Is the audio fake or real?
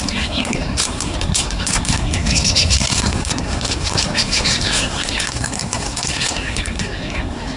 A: fake